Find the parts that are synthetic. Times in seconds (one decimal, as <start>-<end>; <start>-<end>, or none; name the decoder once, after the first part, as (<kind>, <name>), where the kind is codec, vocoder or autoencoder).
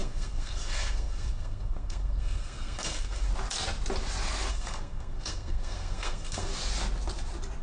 0.0-3.3 (codec, SNAC); 4.5-6.5